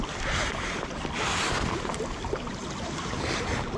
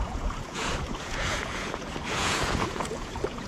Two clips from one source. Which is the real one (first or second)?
first